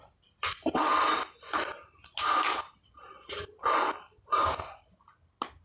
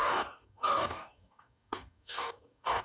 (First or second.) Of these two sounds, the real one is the first